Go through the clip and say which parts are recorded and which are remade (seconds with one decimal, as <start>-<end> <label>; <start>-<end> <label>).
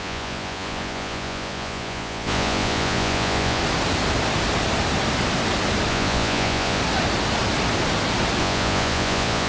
0.0-3.6 remade; 3.6-5.9 recorded; 5.9-6.8 remade; 6.8-8.4 recorded; 8.4-9.5 remade